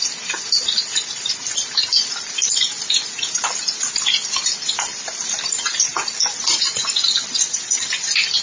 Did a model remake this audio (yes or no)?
no